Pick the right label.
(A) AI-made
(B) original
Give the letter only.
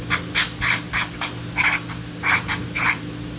B